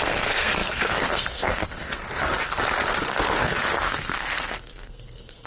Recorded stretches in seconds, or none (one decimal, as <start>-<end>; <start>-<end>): 2.0-3.1